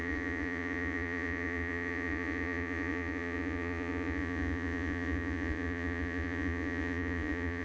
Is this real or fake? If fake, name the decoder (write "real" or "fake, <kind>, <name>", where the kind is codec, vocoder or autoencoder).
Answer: fake, vocoder, Vocos